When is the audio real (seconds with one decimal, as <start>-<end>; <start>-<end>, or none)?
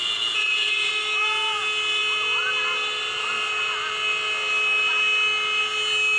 0.9-6.2